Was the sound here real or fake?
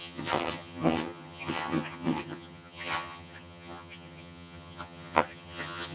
fake